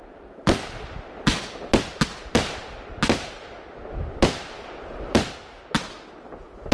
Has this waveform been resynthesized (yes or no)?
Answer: no